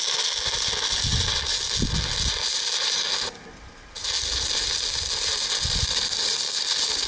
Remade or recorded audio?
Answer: recorded